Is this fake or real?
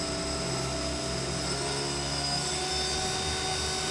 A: real